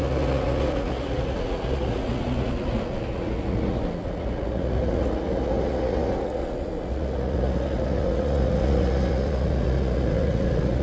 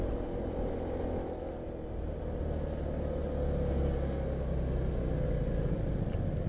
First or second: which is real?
second